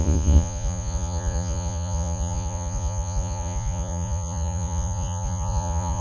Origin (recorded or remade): remade